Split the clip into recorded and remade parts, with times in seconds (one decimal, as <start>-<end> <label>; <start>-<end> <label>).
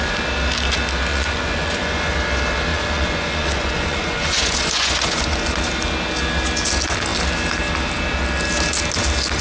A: 0.0-1.1 recorded; 1.1-2.1 remade; 2.1-2.7 recorded; 2.7-5.7 remade; 5.7-9.4 recorded